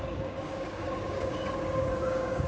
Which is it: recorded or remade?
remade